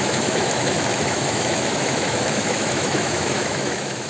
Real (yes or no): no